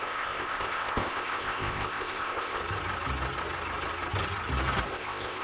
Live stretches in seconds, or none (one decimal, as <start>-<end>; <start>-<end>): 2.6-4.9